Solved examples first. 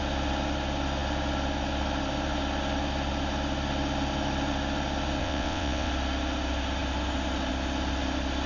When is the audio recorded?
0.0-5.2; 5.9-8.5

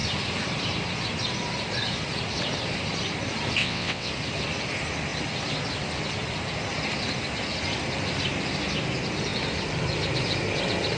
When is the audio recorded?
0.0-3.6; 4.1-11.0

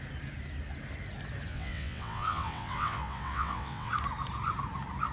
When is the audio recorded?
0.0-1.5; 3.9-5.1